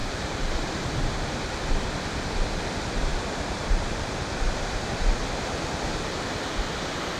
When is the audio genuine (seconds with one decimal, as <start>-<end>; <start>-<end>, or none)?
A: 0.9-3.1; 5.0-7.2